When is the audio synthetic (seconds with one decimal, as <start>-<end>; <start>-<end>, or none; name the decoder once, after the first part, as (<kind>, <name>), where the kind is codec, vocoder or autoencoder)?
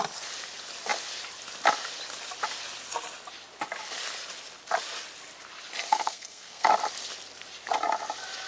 5.9-6.7 (codec, SNAC)